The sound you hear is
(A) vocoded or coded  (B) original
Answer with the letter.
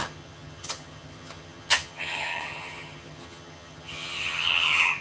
A